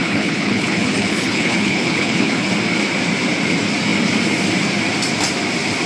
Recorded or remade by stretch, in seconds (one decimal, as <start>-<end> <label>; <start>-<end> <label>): 0.0-2.5 remade; 2.5-5.9 recorded